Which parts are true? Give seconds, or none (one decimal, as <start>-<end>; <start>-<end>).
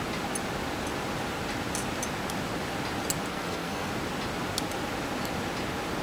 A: 0.0-3.3; 3.9-6.0